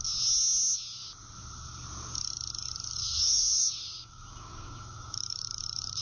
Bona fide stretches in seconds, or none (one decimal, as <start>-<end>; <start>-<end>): 0.0-3.0